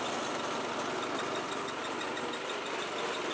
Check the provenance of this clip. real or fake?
real